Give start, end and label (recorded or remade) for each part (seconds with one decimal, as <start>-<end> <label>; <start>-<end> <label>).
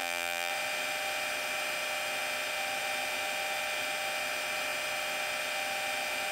0.0-0.5 remade; 0.5-6.3 recorded